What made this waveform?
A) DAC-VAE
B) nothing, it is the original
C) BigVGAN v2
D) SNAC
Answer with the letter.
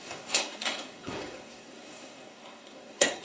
D